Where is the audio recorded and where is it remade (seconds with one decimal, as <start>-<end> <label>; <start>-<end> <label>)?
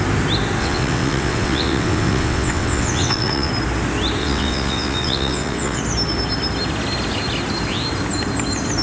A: 0.0-0.6 recorded; 0.6-3.5 remade; 3.5-4.2 recorded; 4.2-5.8 remade; 5.8-8.8 recorded